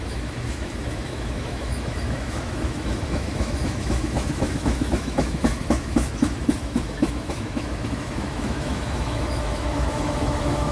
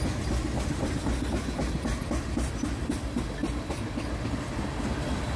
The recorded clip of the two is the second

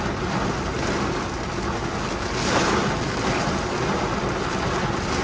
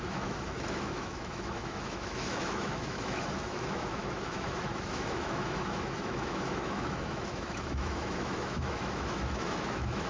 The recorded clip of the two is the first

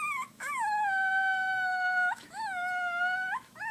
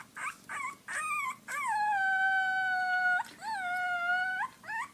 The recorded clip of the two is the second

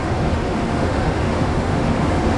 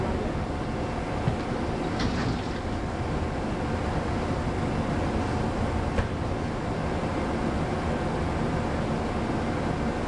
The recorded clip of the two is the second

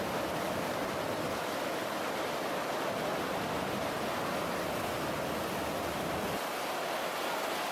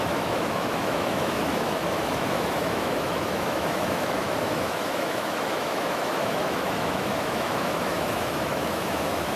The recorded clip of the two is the first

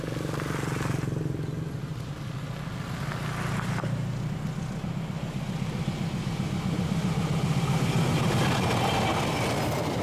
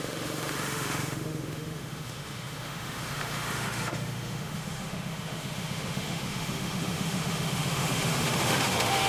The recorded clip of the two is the first